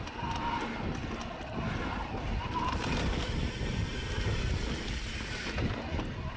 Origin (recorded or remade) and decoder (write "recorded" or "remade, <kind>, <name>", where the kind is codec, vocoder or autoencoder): recorded